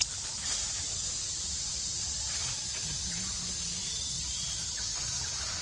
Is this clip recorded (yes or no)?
yes